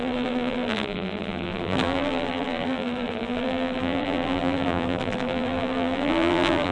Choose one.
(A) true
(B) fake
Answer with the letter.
B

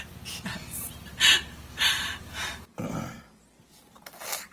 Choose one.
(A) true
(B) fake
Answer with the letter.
A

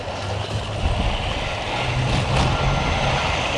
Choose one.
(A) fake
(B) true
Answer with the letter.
B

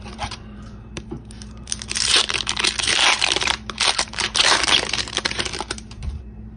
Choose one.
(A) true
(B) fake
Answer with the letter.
B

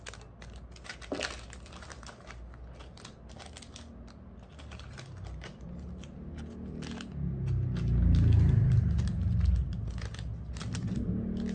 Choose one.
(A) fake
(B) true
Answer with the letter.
B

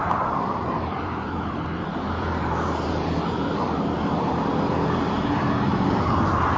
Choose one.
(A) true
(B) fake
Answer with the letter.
B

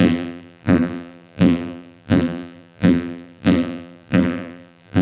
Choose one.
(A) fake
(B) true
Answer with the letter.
A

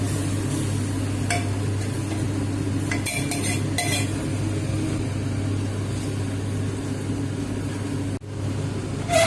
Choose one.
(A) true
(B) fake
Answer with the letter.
A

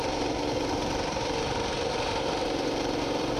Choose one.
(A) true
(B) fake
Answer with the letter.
B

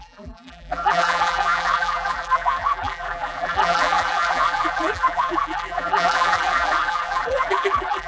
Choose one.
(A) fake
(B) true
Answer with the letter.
A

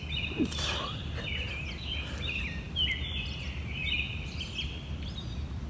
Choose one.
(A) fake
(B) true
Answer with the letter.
B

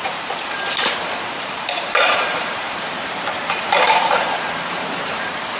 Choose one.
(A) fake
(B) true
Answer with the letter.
A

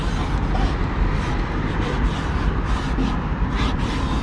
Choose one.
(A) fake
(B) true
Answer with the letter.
B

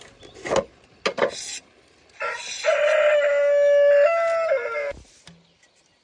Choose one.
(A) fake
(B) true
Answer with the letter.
B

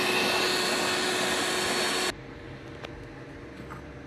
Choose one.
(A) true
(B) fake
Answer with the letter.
A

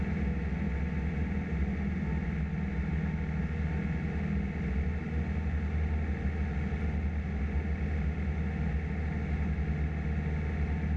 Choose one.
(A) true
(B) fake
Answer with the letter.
A